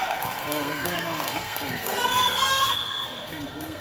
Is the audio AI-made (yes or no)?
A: yes